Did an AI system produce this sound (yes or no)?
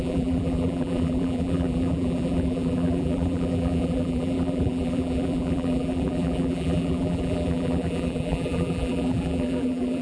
yes